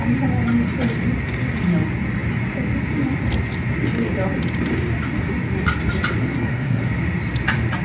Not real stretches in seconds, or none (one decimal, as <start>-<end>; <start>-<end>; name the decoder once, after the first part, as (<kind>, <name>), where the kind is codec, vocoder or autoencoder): 6.2-6.9 (codec, SNAC)